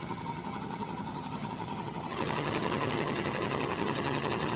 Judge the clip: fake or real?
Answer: fake